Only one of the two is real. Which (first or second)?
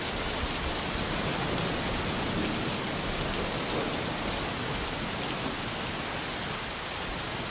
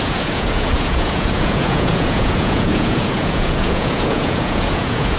first